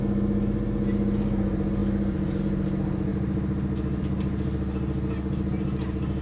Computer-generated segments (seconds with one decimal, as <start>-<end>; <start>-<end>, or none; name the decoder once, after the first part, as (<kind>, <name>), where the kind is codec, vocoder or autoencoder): none